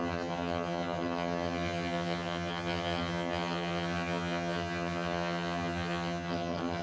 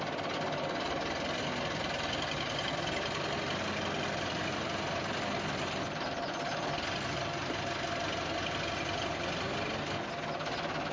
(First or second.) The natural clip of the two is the second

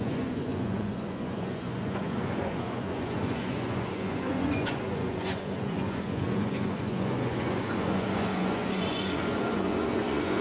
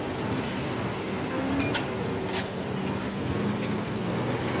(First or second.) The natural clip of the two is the second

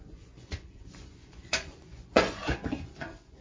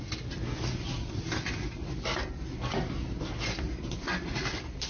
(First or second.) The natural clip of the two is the second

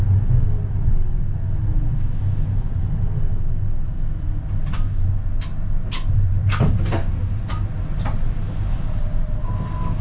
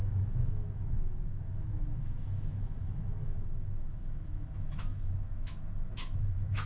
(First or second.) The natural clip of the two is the first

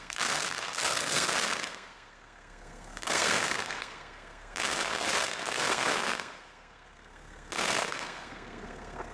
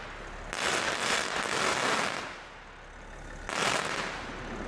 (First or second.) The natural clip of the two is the second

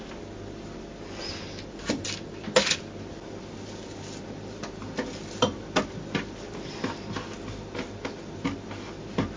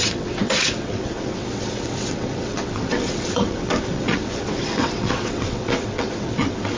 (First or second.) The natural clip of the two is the first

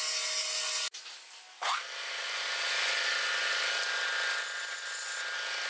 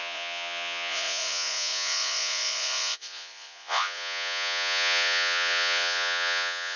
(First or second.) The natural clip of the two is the first